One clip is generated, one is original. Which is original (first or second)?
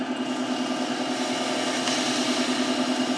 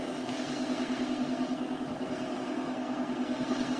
first